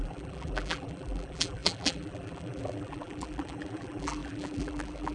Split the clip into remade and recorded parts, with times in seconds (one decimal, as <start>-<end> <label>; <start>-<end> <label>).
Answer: 0.0-5.1 remade